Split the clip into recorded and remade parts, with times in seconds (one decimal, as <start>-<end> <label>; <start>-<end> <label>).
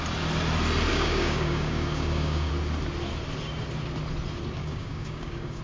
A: 0.0-0.9 recorded; 0.9-2.5 remade; 2.5-4.6 recorded; 4.6-5.6 remade